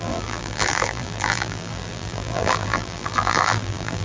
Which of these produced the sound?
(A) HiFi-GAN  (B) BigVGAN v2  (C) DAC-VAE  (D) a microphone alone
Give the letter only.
B